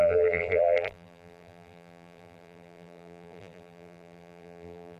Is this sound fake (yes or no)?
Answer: yes